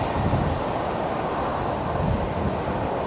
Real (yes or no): yes